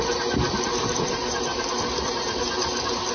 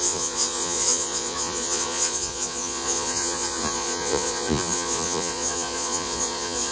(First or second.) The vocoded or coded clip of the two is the second